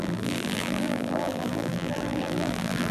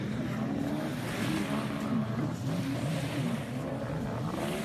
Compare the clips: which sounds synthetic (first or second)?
first